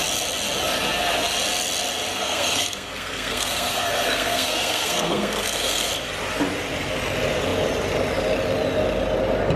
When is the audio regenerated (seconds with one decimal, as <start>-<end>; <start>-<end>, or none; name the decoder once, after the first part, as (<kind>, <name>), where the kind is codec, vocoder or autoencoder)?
2.1-5.9 (codec, SNAC)